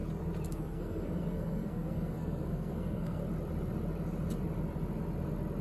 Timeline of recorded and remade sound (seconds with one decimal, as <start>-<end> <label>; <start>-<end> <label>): 0.0-0.5 recorded; 0.5-3.2 remade; 3.2-5.6 recorded